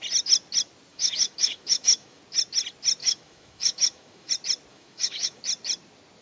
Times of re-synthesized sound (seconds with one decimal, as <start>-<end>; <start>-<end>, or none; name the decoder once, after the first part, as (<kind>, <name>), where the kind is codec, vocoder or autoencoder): 0.9-2.2 (autoencoder, DAC-VAE); 3.0-4.3; 4.7-5.4